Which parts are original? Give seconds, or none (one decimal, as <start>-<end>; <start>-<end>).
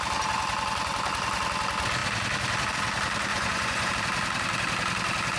0.0-3.3; 3.9-5.4